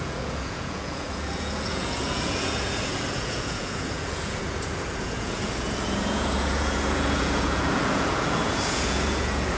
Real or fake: fake